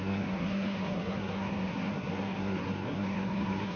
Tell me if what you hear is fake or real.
fake